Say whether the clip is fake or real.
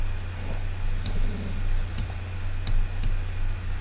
real